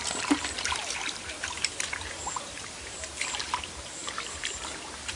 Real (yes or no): no